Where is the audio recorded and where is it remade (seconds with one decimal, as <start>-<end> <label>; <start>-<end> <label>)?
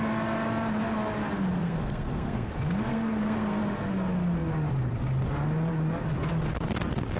0.0-1.6 recorded; 1.6-2.5 remade; 2.5-2.9 recorded; 2.9-3.6 remade; 3.6-7.2 recorded